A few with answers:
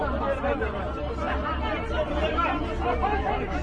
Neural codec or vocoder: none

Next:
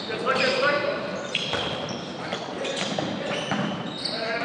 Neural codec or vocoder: none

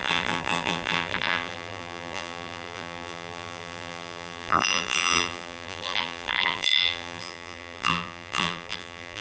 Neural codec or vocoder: vocoder, BigVGAN v2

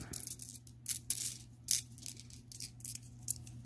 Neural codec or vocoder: none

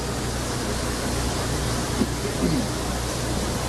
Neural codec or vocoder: none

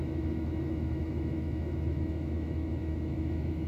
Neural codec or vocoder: autoencoder, DAC-VAE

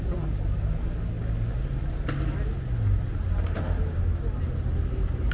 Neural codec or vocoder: none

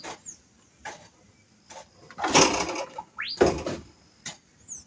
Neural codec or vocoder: none